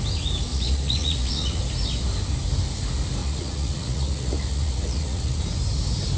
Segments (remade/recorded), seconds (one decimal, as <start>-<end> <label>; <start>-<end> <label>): 0.0-0.5 recorded; 0.5-1.6 remade; 1.6-3.2 recorded; 3.2-5.4 remade; 5.4-6.2 recorded